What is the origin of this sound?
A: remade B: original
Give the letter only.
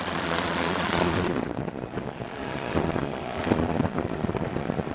A